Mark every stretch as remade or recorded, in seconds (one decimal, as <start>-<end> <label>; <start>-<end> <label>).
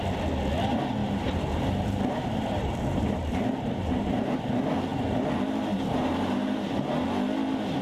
0.0-1.0 recorded; 1.0-4.4 remade; 4.4-7.8 recorded